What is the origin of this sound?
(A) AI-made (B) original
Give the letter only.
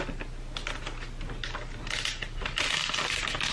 B